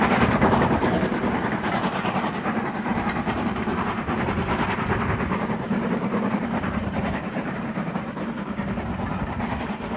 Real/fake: fake